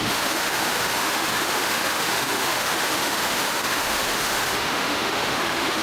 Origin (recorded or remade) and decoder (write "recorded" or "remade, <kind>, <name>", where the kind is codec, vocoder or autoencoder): remade, autoencoder, DAC-VAE